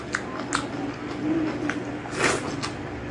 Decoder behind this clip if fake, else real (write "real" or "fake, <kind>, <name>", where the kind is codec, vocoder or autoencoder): real